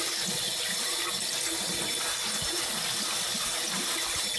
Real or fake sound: real